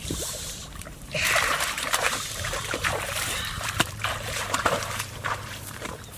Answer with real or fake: fake